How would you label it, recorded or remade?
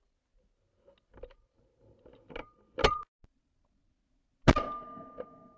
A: recorded